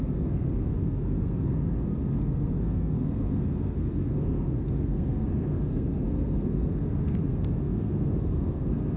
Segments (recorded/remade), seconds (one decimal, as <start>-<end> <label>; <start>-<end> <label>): 0.0-9.0 remade